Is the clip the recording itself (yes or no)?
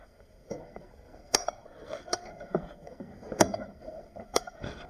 no